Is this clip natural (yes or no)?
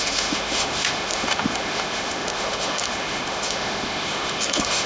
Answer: no